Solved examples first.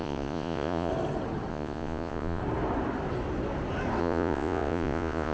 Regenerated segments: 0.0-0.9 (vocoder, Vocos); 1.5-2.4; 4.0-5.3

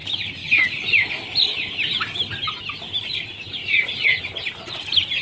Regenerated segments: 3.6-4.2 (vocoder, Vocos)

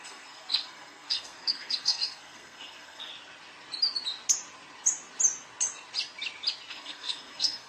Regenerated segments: 0.0-3.1 (codec, SNAC); 6.7-7.7